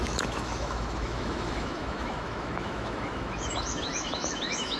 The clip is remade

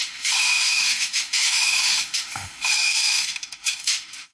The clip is remade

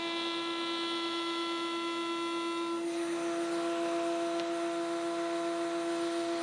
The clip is recorded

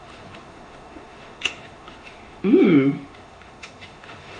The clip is remade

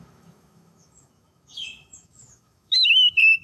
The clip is remade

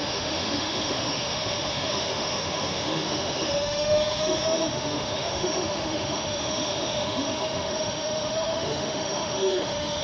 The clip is remade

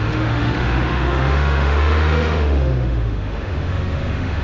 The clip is remade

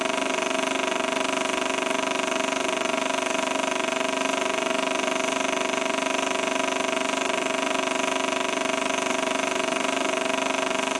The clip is recorded